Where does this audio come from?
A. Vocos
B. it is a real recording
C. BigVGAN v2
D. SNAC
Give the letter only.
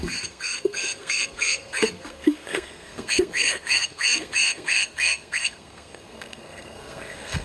D